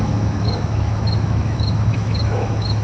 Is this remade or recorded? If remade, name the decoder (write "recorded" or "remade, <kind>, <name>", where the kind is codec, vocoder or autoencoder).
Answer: remade, autoencoder, DAC-VAE